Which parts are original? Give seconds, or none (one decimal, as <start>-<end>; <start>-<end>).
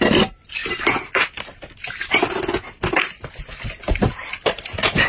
0.0-5.1